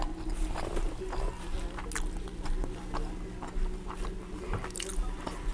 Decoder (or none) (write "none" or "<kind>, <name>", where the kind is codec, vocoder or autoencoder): none